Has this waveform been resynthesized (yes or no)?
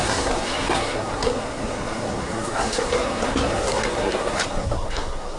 yes